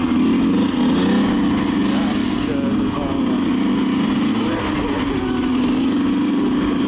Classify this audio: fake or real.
real